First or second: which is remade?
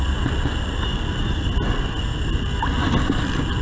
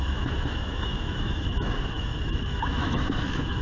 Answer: second